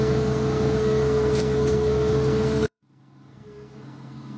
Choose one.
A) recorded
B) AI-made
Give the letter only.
B